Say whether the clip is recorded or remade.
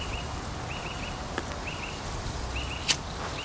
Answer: recorded